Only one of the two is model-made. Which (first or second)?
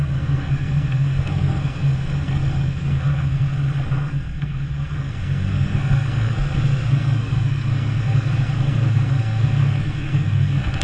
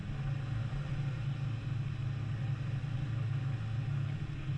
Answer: first